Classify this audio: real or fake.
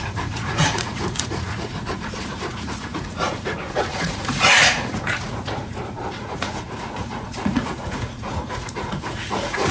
fake